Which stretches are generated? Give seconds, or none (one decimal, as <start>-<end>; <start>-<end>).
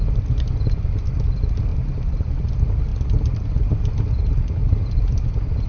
none